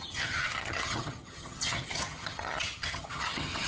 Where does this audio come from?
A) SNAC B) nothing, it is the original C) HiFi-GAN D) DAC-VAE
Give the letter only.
C